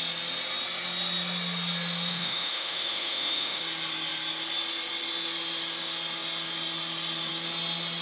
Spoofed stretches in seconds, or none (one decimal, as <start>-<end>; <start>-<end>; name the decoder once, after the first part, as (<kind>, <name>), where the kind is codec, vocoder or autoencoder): 2.1-3.6 (autoencoder, DAC-VAE)